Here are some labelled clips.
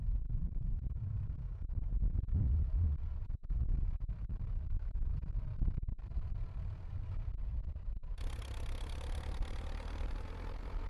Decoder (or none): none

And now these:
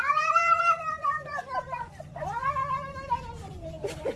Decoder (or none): vocoder, BigVGAN v2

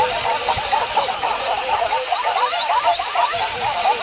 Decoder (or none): none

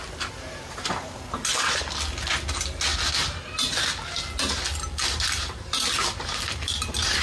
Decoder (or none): none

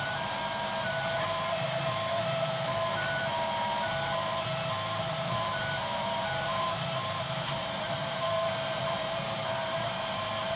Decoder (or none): vocoder, BigVGAN v2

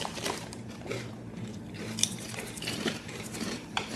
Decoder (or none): vocoder, BigVGAN v2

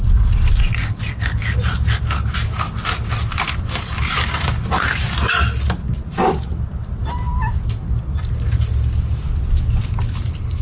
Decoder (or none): none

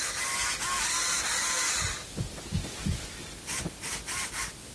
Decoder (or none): none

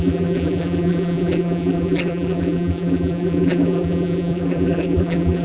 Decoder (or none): vocoder, BigVGAN v2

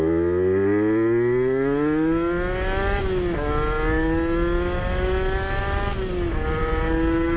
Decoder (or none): none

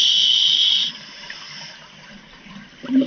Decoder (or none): none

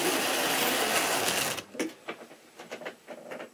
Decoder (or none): none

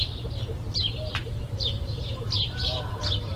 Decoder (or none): vocoder, BigVGAN v2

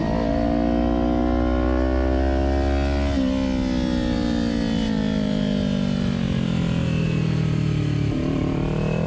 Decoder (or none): none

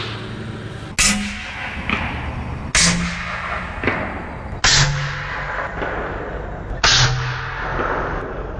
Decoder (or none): none